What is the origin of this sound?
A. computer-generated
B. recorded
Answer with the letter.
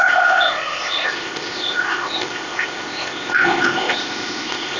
A